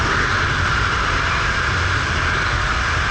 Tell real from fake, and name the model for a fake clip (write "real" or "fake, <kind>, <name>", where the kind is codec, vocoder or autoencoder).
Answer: real